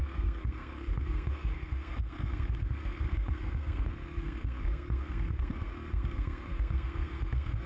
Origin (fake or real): fake